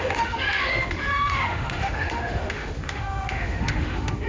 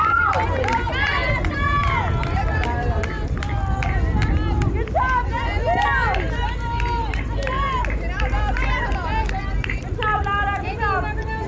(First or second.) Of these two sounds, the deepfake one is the first